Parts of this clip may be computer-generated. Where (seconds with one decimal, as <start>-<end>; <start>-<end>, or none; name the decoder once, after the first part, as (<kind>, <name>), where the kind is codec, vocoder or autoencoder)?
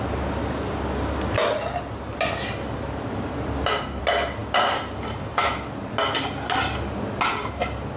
none